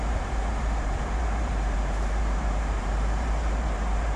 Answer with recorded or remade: remade